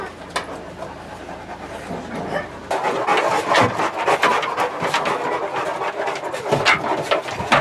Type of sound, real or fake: real